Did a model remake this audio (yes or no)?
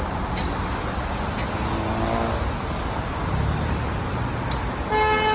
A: no